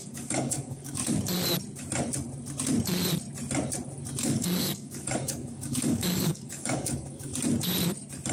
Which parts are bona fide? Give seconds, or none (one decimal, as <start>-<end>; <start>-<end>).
1.0-4.2; 7.3-8.3